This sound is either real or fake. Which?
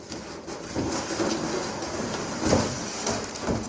real